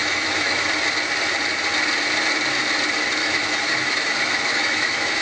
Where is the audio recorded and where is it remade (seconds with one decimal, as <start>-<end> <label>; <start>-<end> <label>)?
0.0-0.7 remade; 0.7-3.2 recorded; 3.2-5.2 remade